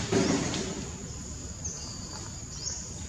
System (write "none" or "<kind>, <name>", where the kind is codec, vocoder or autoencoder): none